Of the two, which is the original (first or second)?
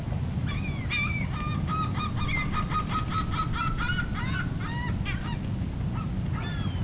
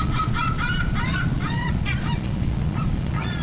first